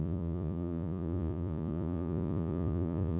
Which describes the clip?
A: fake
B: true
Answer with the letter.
A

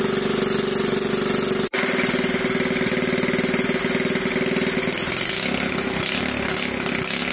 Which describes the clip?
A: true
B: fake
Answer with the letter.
A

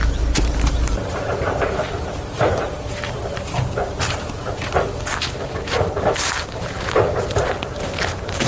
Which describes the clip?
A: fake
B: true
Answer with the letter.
A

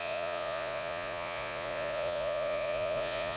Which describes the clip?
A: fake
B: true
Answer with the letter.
A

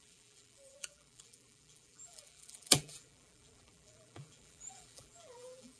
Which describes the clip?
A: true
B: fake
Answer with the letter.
B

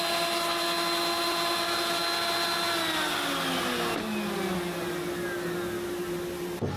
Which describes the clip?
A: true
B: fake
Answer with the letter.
A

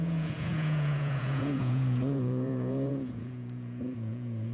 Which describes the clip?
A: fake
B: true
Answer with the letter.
A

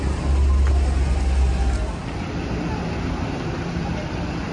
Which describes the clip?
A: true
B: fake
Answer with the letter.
A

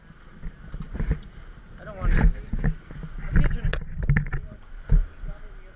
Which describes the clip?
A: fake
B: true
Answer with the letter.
B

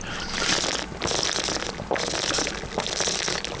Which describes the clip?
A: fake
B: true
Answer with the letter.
B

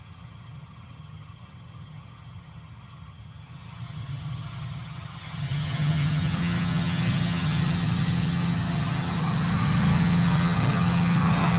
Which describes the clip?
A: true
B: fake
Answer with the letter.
B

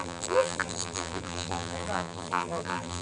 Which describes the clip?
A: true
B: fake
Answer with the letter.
B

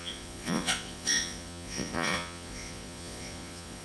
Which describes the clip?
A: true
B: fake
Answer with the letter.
B